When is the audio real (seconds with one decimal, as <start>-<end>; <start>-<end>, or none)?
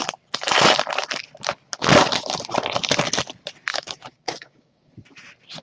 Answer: 0.0-3.7; 4.9-5.6